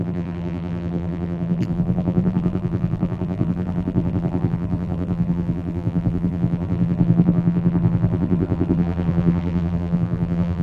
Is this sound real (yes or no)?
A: no